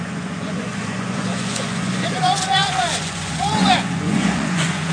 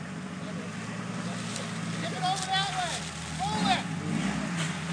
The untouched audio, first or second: second